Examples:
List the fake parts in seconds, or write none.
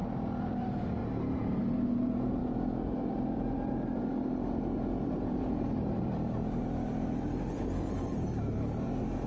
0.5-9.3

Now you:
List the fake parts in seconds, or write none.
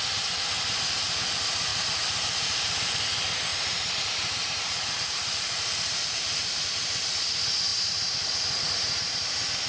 1.7-3.0; 3.5-6.7; 7.7-8.4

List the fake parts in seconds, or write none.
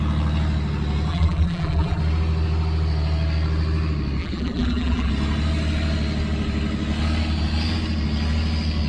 1.1-2.0; 4.2-5.1